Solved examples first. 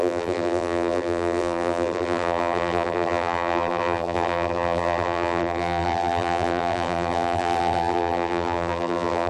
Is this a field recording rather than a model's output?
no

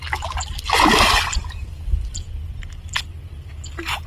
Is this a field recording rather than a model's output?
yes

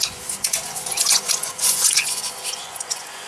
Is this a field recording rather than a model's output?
no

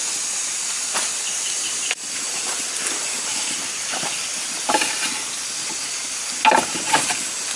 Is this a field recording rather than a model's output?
yes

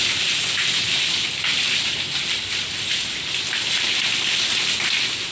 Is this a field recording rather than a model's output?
yes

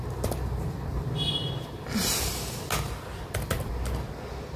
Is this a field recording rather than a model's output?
yes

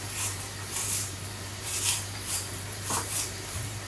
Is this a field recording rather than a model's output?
no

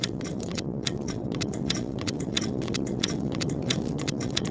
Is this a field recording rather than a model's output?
no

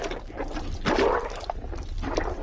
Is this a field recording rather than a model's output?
yes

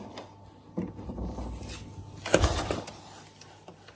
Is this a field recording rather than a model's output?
yes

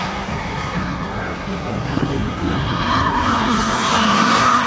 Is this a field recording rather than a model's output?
no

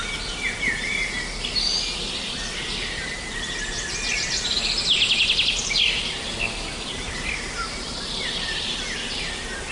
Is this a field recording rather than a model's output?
yes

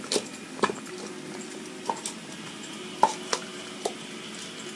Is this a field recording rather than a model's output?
yes